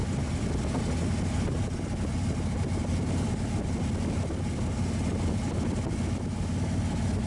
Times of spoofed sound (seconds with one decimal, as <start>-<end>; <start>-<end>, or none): none